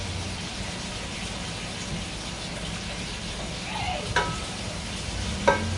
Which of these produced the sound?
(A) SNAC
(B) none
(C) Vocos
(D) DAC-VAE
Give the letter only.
B